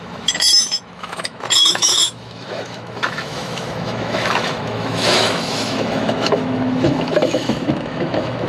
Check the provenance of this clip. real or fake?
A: fake